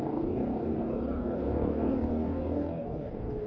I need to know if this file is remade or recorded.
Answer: remade